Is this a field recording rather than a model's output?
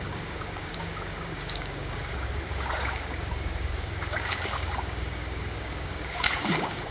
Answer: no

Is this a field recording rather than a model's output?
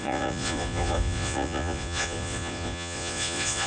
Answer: no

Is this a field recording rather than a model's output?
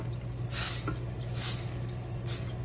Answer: yes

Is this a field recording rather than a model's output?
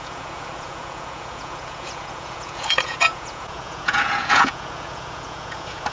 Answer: no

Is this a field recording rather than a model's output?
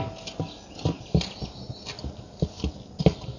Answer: yes